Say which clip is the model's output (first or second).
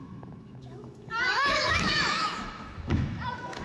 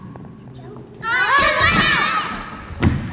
first